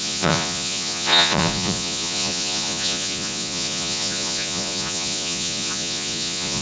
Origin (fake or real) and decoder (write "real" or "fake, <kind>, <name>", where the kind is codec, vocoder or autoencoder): fake, vocoder, Vocos